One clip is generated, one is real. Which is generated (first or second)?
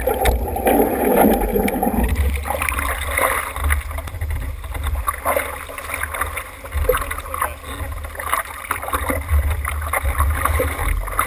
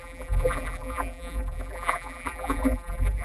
second